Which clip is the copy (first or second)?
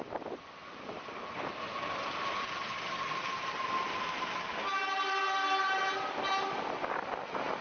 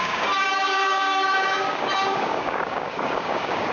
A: second